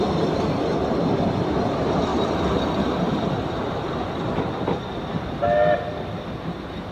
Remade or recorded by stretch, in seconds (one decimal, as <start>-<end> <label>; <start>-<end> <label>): 0.0-2.1 remade; 2.1-6.2 recorded; 6.2-6.9 remade